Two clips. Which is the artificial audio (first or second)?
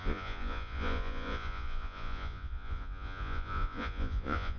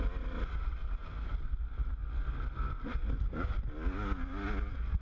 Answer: first